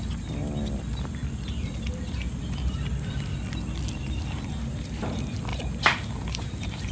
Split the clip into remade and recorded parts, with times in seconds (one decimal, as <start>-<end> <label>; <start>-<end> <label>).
0.0-5.5 recorded; 5.5-6.9 remade

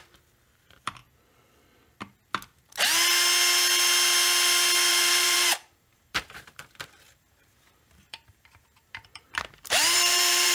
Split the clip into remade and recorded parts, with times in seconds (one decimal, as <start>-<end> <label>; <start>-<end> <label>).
0.0-1.0 remade; 1.0-4.9 recorded; 4.9-10.5 remade

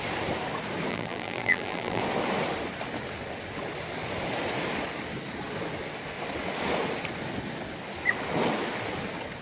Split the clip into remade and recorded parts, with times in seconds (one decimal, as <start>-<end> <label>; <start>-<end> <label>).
0.0-0.9 recorded; 0.9-2.0 remade; 2.0-9.4 recorded

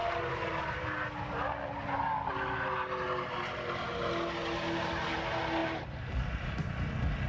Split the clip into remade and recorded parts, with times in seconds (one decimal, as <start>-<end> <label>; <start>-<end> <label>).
0.0-5.6 recorded; 5.6-6.7 remade; 6.7-7.3 recorded

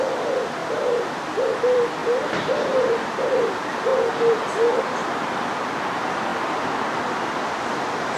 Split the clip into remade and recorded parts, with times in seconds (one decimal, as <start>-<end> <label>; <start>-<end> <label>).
0.0-0.6 recorded; 0.6-1.6 remade; 1.6-6.3 recorded; 6.3-6.8 remade; 6.8-8.2 recorded

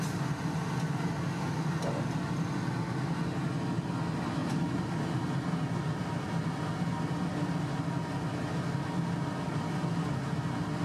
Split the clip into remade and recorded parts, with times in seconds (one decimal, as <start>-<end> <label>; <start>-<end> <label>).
0.0-10.8 recorded

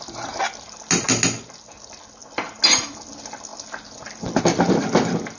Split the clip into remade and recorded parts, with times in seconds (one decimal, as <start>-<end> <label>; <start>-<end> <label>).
0.0-5.4 recorded